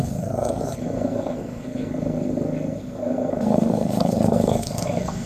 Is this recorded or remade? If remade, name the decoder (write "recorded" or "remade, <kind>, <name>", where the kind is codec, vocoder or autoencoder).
remade, codec, SNAC